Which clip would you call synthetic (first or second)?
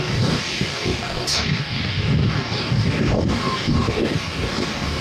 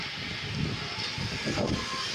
first